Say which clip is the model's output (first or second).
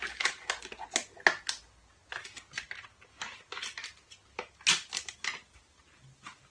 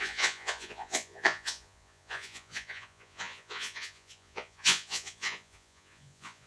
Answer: second